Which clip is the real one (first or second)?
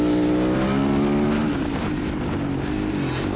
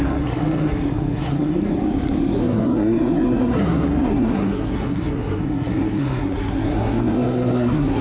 first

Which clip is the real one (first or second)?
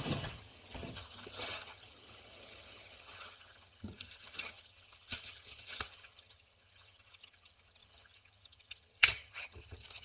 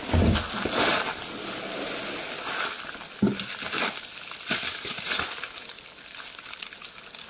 second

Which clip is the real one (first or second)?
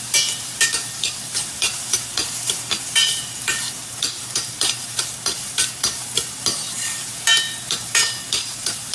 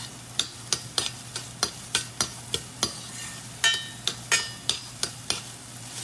second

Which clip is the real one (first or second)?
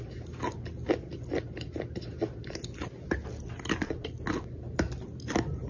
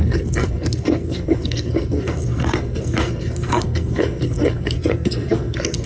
first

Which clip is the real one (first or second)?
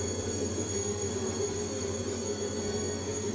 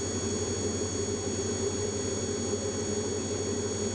second